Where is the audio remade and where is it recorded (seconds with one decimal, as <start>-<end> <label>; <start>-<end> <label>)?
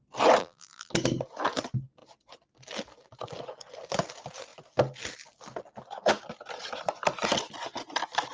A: 0.0-0.4 recorded; 0.4-0.9 remade; 0.9-8.3 recorded